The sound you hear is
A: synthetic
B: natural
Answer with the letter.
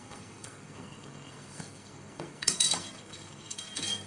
A